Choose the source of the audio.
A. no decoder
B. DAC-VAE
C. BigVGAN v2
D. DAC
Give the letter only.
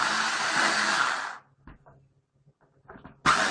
A